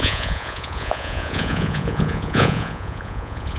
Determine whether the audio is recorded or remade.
remade